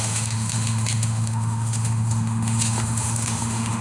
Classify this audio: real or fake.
fake